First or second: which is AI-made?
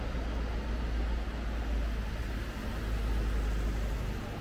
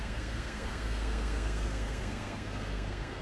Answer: second